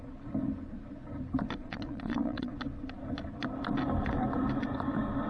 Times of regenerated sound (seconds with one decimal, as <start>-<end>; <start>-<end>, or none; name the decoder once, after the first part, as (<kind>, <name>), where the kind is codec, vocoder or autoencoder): 1.6-2.5 (vocoder, Vocos)